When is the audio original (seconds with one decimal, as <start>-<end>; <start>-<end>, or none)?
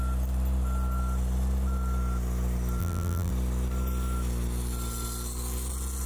0.0-2.8; 3.3-6.1